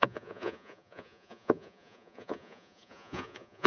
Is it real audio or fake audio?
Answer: fake